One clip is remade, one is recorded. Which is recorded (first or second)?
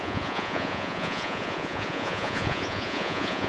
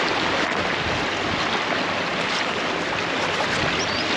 second